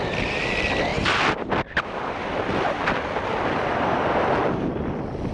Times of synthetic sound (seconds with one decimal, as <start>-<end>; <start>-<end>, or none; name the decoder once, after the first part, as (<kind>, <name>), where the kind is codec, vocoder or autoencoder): none